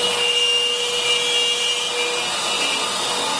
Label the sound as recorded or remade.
recorded